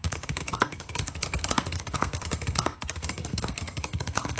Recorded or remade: remade